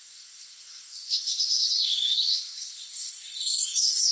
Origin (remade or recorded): remade